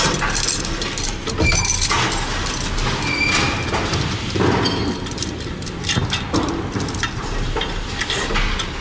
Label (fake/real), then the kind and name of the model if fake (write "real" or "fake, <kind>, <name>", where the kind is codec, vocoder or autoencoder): real